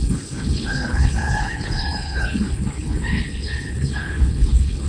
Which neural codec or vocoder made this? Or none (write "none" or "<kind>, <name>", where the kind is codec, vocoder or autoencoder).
codec, HILCodec